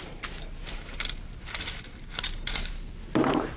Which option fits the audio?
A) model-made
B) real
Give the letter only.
B